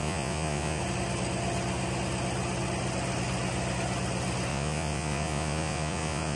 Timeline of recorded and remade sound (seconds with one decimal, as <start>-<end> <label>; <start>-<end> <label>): 0.0-0.8 remade; 0.8-4.5 recorded; 4.5-6.4 remade